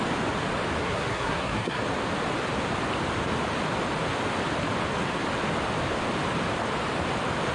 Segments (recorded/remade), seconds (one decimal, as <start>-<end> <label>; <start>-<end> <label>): 0.0-0.8 recorded; 0.8-1.8 remade; 1.8-7.5 recorded